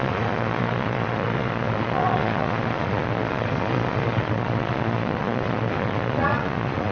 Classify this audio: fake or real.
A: fake